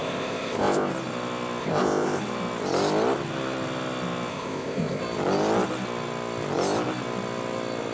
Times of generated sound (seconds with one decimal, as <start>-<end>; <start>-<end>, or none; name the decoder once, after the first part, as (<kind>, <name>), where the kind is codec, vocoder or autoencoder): 0.0-0.9 (codec, ZipCodec); 1.6-2.2; 4.3-5.0